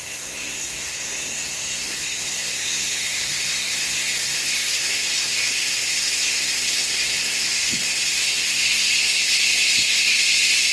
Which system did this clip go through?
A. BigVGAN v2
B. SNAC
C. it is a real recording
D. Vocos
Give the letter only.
B